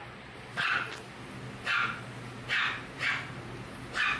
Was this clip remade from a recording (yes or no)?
no